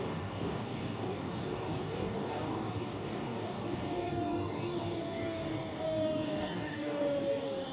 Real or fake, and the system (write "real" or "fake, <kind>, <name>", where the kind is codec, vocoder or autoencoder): fake, codec, DAC